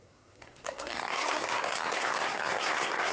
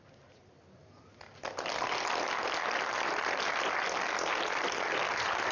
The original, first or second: second